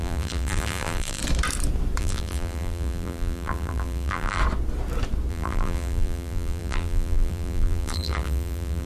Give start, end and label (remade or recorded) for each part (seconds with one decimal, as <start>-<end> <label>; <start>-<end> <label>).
0.0-1.2 remade; 1.2-2.0 recorded; 2.0-4.4 remade; 4.4-5.3 recorded; 5.3-8.9 remade